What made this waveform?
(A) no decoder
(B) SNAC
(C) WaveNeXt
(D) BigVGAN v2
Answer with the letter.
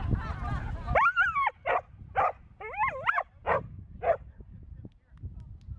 A